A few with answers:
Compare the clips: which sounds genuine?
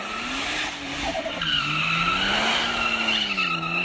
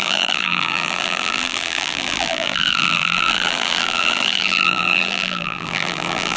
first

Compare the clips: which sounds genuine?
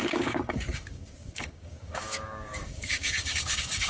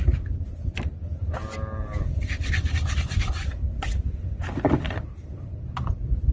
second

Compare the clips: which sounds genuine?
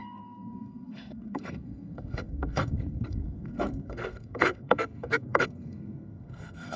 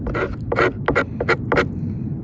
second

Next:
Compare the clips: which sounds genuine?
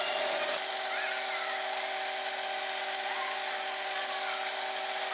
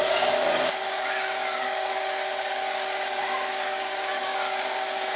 first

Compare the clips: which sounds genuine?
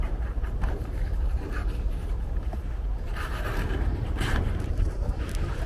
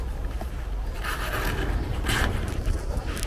second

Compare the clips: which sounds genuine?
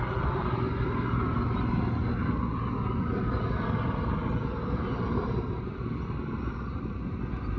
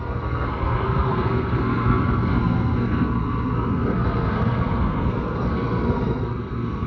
first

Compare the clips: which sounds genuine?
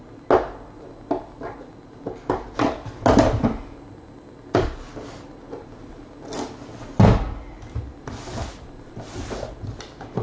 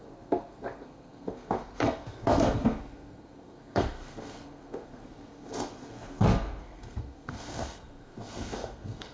first